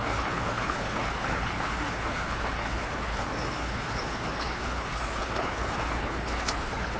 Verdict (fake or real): fake